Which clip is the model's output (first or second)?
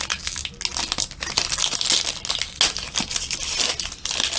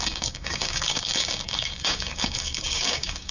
second